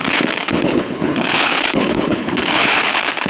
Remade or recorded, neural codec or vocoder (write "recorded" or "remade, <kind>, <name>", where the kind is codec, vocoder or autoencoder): remade, codec, HILCodec